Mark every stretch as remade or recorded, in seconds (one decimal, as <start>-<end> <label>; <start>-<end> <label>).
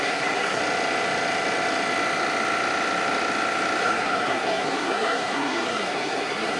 0.0-0.6 remade; 0.6-3.8 recorded; 3.8-6.6 remade